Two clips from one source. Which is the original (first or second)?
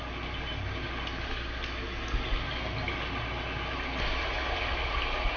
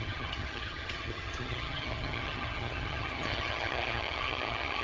first